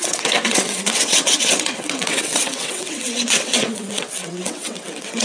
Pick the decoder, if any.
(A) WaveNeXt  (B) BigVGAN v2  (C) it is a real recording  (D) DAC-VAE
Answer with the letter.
A